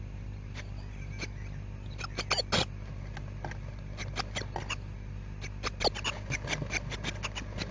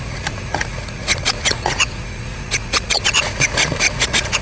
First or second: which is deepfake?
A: second